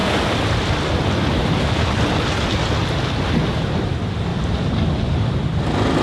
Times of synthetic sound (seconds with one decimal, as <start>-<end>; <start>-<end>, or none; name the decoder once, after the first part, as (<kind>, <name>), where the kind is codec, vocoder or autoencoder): none